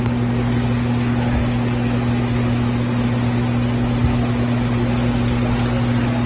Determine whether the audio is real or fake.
real